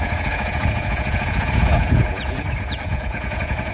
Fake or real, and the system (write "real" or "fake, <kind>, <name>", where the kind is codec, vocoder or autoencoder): fake, vocoder, Vocos